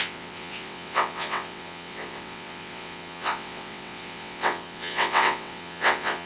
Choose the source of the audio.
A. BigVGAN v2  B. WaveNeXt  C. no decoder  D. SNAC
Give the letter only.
B